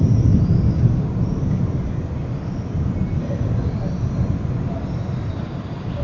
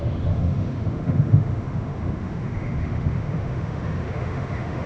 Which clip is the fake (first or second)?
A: second